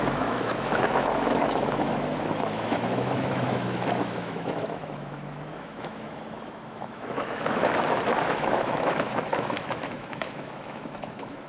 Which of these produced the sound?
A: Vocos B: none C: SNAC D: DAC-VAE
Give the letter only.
D